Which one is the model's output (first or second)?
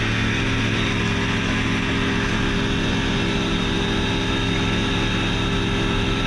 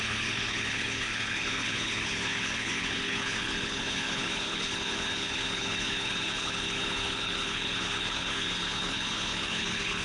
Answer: second